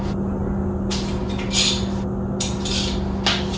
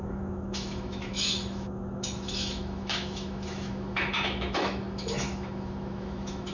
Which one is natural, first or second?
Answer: first